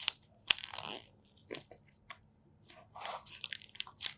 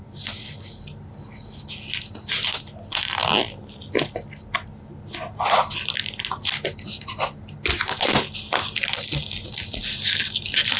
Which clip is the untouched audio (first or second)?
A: second